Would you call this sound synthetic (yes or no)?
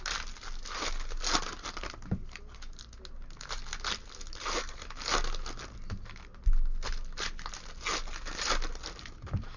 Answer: no